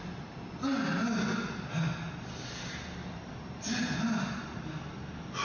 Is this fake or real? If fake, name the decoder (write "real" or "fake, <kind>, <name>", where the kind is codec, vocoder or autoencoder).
real